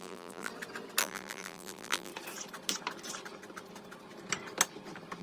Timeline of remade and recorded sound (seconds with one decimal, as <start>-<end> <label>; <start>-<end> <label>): 0.0-0.5 remade; 0.5-1.0 recorded; 1.0-2.1 remade; 2.1-5.2 recorded